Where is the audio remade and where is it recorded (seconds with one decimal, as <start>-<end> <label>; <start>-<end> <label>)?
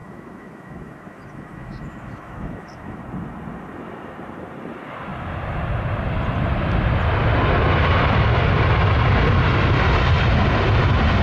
0.0-3.0 remade; 3.0-11.2 recorded